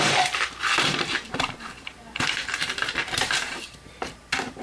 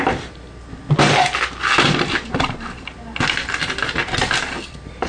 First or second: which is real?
second